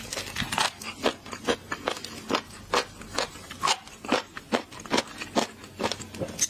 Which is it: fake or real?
real